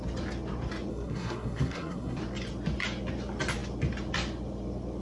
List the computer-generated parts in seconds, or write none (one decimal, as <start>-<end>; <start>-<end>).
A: 0.9-2.2